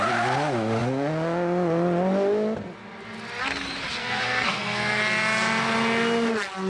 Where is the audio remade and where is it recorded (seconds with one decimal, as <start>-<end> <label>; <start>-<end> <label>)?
0.0-4.0 recorded; 4.0-5.0 remade; 5.0-6.7 recorded